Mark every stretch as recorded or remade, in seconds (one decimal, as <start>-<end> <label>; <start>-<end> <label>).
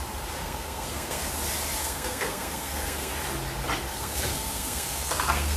0.0-0.4 recorded; 0.4-1.3 remade; 1.3-1.8 recorded; 1.8-3.1 remade; 3.1-3.9 recorded; 3.9-5.6 remade